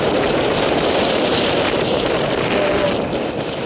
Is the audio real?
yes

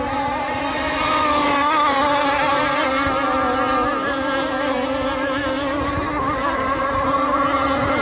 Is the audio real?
yes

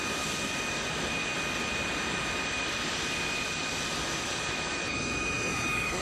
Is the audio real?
yes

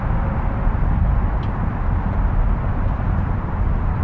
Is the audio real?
yes